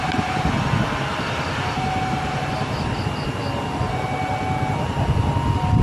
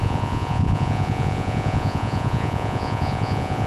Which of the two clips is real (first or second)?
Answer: first